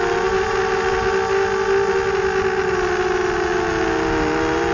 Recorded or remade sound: recorded